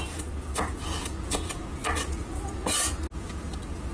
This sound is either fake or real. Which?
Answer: real